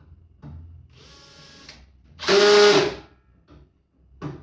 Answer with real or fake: real